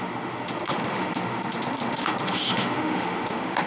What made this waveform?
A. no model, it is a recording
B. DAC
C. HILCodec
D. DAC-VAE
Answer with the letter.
D